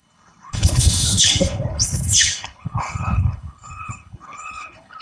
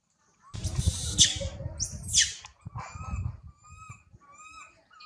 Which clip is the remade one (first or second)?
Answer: first